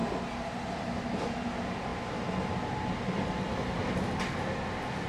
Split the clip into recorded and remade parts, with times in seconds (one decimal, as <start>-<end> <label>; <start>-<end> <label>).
0.0-5.1 recorded